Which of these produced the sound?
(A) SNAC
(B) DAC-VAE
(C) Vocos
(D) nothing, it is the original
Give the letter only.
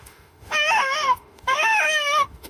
B